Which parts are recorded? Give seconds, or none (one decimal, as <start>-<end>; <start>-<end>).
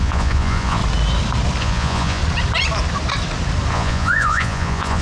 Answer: 0.8-1.6; 2.2-3.7